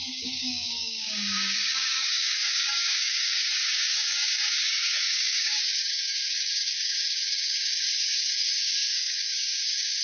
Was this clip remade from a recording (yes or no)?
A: yes